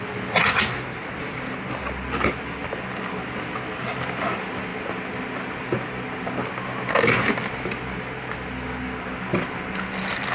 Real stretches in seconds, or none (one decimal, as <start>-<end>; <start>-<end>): 0.0-10.3